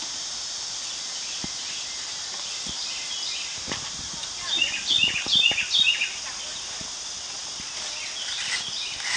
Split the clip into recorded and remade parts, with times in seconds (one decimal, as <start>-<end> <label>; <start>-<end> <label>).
0.0-2.3 recorded; 2.3-2.8 remade; 2.8-3.5 recorded; 3.5-4.1 remade; 4.1-9.2 recorded